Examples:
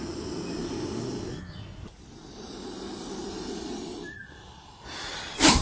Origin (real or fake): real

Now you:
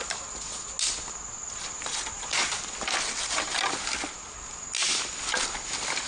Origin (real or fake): real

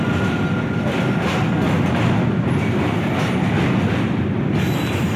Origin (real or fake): real